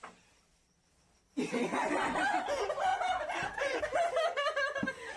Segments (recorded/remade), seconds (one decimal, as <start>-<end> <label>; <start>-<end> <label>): 0.0-2.9 recorded; 2.9-3.8 remade; 3.8-5.2 recorded